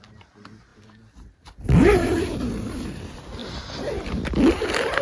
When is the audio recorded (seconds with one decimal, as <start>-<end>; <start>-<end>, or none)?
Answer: 0.0-5.0